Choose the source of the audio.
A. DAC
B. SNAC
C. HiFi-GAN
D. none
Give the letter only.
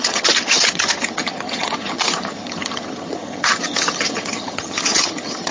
C